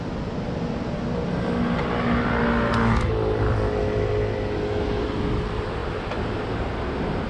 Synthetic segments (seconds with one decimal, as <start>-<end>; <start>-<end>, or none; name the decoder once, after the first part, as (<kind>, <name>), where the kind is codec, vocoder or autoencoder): none